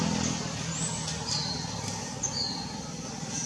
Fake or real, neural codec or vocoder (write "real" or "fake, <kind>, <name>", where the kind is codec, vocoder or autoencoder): real